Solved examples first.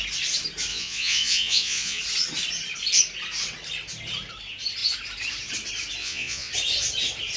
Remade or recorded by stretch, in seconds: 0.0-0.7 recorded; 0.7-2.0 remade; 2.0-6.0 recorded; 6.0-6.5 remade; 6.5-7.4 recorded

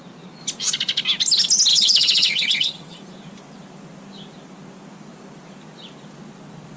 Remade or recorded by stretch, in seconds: 0.0-1.7 recorded; 1.7-3.0 remade; 3.0-6.8 recorded

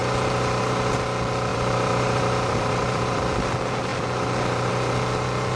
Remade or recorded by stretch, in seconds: 0.0-1.5 recorded; 1.5-3.2 remade; 3.2-5.6 recorded

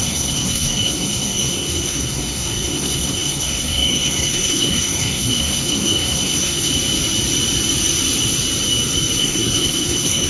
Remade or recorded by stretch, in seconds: 0.0-6.7 remade; 6.7-9.2 recorded; 9.2-10.3 remade

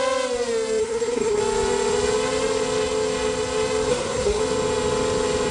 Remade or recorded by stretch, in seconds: 0.0-0.8 recorded; 0.8-1.4 remade; 1.4-3.9 recorded; 3.9-4.4 remade; 4.4-5.5 recorded